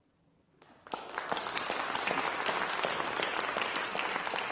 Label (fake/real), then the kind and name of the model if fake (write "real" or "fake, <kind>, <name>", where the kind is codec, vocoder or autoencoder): real